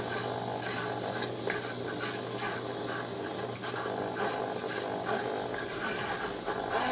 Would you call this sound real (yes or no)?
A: yes